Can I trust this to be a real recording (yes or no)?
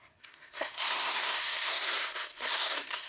no